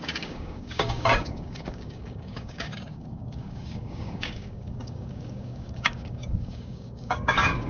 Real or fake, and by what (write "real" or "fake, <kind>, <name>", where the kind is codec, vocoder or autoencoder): fake, codec, DAC